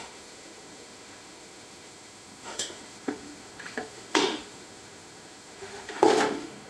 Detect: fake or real fake